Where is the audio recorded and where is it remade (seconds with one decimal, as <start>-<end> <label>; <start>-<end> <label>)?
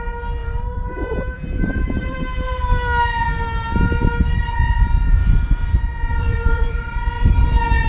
0.0-0.4 recorded; 0.4-2.2 remade; 2.2-6.1 recorded; 6.1-7.3 remade; 7.3-7.9 recorded